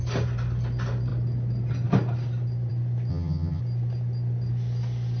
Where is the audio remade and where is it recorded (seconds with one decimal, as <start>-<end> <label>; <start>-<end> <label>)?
0.0-3.1 recorded; 3.1-3.6 remade; 3.6-5.2 recorded